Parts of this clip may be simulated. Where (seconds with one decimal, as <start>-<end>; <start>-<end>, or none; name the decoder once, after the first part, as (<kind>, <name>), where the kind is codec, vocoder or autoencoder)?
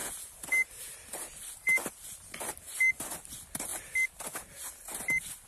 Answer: 0.0-3.3 (vocoder, BigVGAN v2)